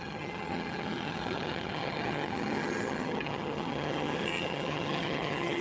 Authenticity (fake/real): fake